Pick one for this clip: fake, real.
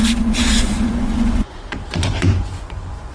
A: fake